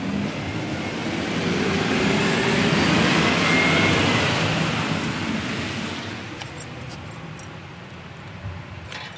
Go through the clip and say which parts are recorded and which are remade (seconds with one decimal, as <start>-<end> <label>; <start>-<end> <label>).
0.0-1.0 recorded; 1.0-2.2 remade; 2.2-9.2 recorded

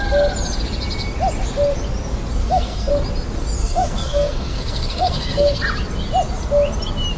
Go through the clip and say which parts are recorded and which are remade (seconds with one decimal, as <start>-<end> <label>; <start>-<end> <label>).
0.0-2.4 recorded; 2.4-2.9 remade; 2.9-3.6 recorded; 3.6-5.6 remade; 5.6-7.2 recorded

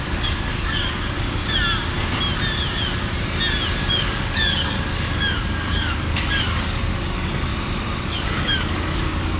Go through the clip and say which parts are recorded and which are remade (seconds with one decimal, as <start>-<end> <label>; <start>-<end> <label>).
0.0-1.4 remade; 1.4-3.9 recorded; 3.9-7.5 remade; 7.5-8.0 recorded; 8.0-9.4 remade

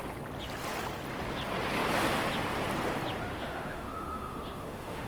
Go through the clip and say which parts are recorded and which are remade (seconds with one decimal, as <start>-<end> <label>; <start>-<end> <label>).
0.0-3.3 recorded; 3.3-5.1 remade

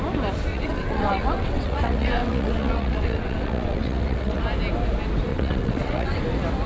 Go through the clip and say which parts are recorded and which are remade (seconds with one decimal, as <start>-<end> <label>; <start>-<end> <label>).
0.0-0.5 recorded; 0.5-4.4 remade; 4.4-5.3 recorded; 5.3-6.2 remade; 6.2-6.7 recorded

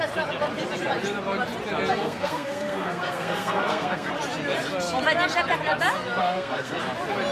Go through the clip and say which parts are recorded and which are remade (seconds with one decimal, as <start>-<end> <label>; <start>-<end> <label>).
0.0-1.9 recorded; 1.9-4.1 remade; 4.1-6.2 recorded; 6.2-6.8 remade; 6.8-7.3 recorded

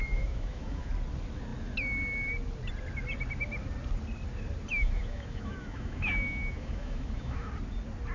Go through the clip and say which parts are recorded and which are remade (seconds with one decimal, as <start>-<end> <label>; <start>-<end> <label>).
0.0-0.9 remade; 0.9-4.7 recorded; 4.7-7.5 remade; 7.5-8.1 recorded